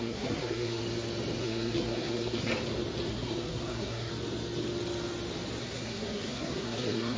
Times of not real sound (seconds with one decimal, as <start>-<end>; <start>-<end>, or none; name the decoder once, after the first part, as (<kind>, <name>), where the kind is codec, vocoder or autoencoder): 0.0-0.8 (codec, SNAC); 1.4-2.5; 3.1-4.1; 5.6-7.2